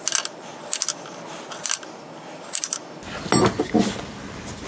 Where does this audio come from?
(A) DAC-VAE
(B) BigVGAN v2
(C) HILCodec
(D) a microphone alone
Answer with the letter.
D